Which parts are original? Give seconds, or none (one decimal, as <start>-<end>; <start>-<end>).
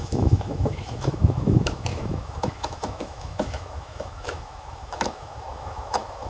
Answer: none